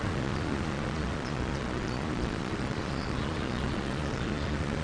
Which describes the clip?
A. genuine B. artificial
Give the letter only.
B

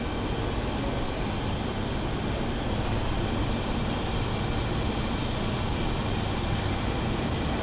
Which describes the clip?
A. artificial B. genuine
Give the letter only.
B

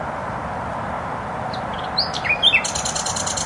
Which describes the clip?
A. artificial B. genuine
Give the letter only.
B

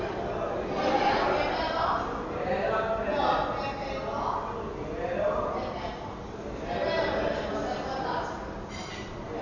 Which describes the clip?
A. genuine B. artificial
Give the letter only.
A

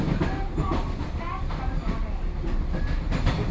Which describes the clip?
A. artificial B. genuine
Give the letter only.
B